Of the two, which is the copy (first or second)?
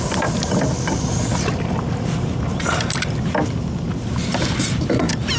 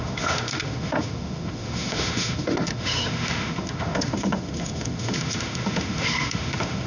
second